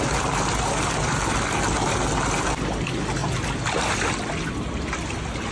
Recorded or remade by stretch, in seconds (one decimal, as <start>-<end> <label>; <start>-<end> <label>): 0.0-5.5 recorded